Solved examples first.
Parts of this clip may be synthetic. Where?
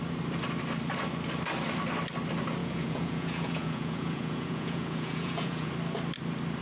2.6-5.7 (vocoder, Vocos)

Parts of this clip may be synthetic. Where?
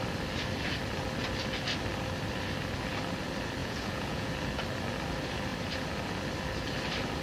3.6-4.3 (vocoder, Vocos)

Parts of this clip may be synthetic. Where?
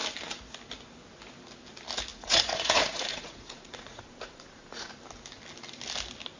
2.1-4.9 (vocoder, Vocos)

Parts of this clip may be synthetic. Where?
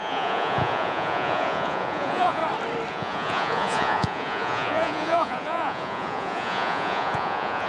0.0-2.4 (vocoder, Vocos); 2.9-7.7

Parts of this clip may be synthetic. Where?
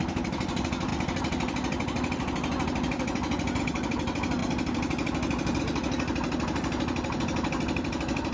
none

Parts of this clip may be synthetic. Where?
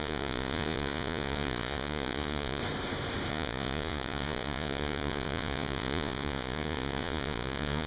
0.0-2.6 (vocoder, Vocos); 3.3-7.9